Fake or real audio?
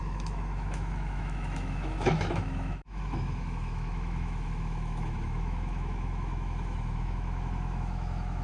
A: fake